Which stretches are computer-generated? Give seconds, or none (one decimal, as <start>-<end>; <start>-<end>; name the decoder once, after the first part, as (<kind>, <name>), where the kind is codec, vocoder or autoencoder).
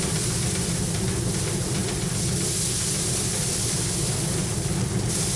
none